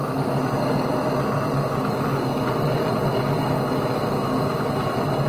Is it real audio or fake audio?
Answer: real